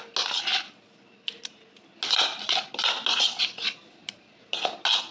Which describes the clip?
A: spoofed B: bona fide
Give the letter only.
B